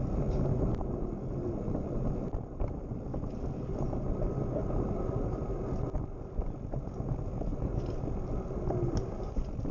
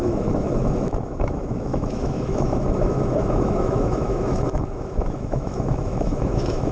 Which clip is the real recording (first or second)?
first